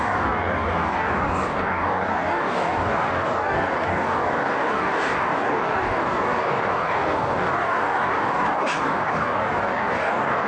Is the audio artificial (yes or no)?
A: yes